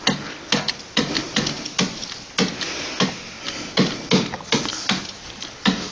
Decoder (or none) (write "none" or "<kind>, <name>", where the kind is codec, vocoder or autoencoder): none